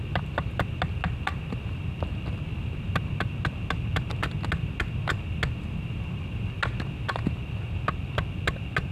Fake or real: real